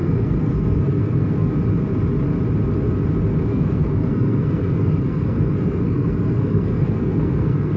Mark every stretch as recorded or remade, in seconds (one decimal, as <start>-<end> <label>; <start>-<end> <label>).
0.0-1.5 remade; 1.5-3.5 recorded; 3.5-7.8 remade